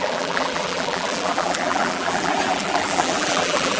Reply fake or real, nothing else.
fake